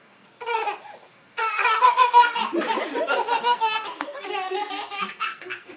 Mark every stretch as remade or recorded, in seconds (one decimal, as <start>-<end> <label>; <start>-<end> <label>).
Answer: 0.0-0.6 remade; 0.6-1.1 recorded; 1.1-2.4 remade; 2.4-3.4 recorded; 3.4-5.8 remade

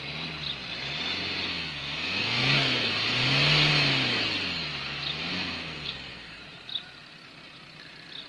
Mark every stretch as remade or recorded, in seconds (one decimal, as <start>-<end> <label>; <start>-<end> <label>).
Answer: 0.0-1.5 recorded; 1.5-2.9 remade; 2.9-5.3 recorded; 5.3-6.4 remade; 6.4-8.3 recorded

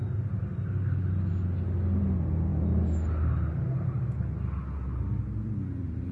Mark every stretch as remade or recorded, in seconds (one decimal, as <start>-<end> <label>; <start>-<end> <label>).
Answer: 0.0-6.1 recorded

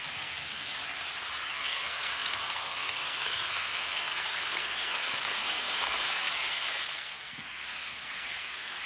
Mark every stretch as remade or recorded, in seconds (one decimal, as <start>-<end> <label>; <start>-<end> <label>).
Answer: 0.0-0.8 remade; 0.8-1.5 recorded; 1.5-8.9 remade